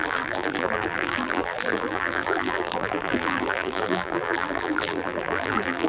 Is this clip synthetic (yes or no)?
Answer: yes